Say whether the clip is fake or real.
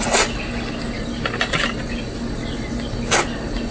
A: real